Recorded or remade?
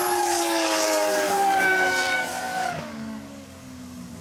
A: remade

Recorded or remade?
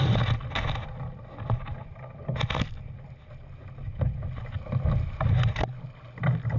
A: recorded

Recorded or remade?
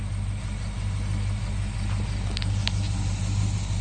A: recorded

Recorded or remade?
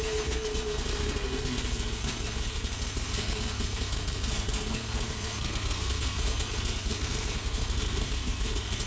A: remade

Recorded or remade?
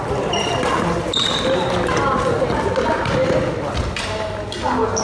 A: recorded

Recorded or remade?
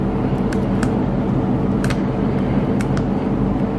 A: remade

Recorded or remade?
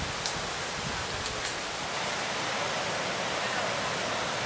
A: recorded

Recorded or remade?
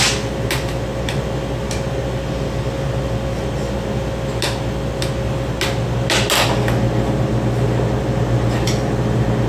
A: recorded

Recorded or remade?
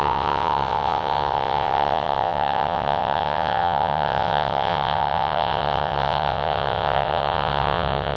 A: remade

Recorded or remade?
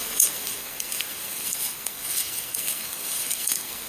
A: remade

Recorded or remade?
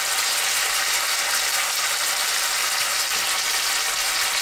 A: recorded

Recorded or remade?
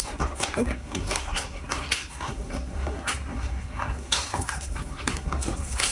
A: remade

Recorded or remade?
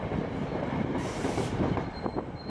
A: remade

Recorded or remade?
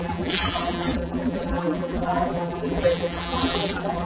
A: remade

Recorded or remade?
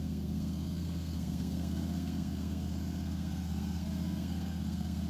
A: remade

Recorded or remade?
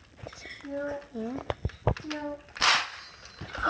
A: recorded